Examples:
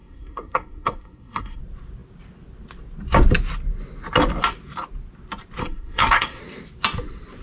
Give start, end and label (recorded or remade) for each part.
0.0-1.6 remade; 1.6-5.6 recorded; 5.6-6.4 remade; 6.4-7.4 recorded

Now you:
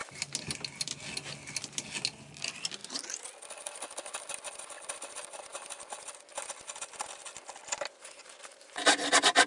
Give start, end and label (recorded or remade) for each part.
0.0-9.5 recorded

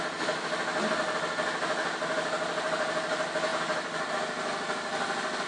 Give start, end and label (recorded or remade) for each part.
0.0-5.5 recorded

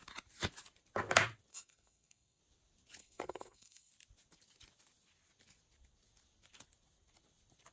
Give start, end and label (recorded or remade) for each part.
0.0-1.5 recorded; 1.5-2.4 remade; 2.4-3.0 recorded; 3.0-3.9 remade; 3.9-7.7 recorded

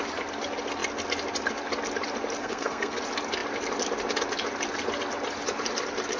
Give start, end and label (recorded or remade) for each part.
0.0-2.4 recorded; 2.4-3.0 remade; 3.0-6.2 recorded

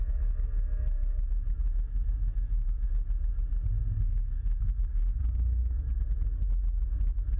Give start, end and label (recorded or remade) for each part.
0.0-1.9 recorded; 1.9-2.9 remade; 2.9-3.8 recorded; 3.8-5.9 remade; 5.9-7.4 recorded